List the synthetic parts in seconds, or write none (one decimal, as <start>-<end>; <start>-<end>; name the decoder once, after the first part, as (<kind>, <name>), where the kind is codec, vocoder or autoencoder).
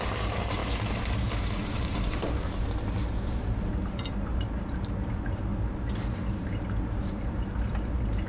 0.0-0.6 (vocoder, BigVGAN v2); 1.2-5.5; 6.1-8.3